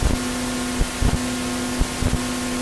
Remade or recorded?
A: recorded